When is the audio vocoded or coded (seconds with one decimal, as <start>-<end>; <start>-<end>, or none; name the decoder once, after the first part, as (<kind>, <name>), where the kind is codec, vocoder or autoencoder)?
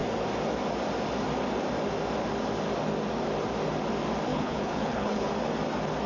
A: 4.3-5.3 (codec, HILCodec)